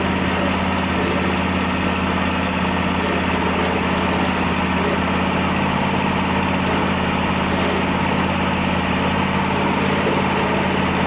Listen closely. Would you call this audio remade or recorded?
recorded